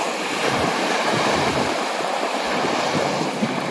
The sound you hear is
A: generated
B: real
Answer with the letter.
A